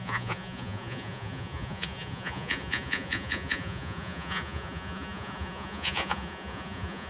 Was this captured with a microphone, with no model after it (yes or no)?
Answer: no